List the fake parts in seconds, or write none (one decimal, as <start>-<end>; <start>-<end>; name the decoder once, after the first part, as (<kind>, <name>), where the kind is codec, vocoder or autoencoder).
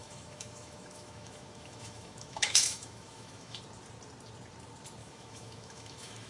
0.0-3.6 (autoencoder, DAC-VAE); 5.0-6.3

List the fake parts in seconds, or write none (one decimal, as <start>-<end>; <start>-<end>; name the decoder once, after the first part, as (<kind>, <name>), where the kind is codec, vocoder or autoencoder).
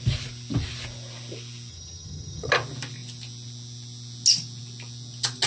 1.7-2.5 (vocoder, HiFi-GAN)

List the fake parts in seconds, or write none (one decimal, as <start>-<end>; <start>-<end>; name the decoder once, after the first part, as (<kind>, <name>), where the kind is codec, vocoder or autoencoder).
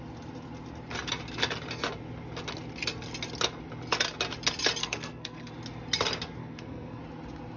4.8-5.5 (codec, SNAC); 6.4-7.0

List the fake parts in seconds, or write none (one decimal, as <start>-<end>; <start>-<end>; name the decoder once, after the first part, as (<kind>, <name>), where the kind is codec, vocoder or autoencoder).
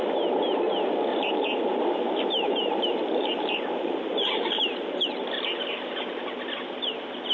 1.1-5.3 (vocoder, BigVGAN v2)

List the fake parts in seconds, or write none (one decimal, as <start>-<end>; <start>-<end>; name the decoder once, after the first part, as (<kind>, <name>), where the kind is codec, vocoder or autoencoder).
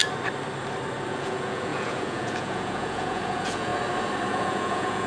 1.1-3.7 (vocoder, Vocos); 4.3-5.1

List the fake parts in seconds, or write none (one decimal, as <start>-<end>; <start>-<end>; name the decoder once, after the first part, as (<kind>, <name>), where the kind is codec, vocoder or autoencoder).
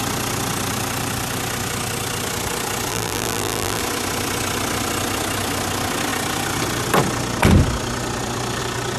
2.9-3.8 (vocoder, BigVGAN v2)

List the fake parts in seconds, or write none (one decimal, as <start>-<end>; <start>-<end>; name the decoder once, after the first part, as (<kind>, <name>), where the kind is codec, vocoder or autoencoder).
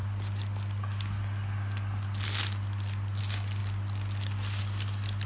none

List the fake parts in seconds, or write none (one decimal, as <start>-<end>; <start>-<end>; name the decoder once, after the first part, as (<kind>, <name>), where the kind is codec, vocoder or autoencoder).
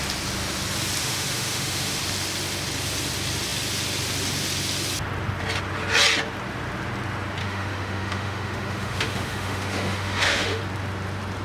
1.0-2.0 (autoencoder, DAC-VAE); 7.4-10.6